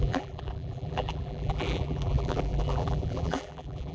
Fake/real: fake